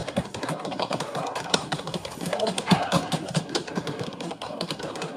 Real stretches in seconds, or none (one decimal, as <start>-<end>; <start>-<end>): none